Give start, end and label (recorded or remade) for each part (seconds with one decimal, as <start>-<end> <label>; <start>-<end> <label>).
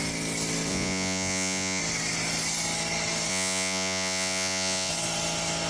0.0-0.7 recorded; 0.7-1.8 remade; 1.8-3.3 recorded; 3.3-4.9 remade; 4.9-5.7 recorded